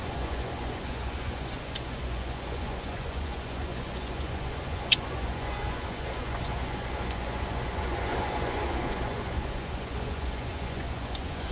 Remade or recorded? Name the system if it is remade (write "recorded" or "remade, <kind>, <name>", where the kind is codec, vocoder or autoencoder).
remade, vocoder, Vocos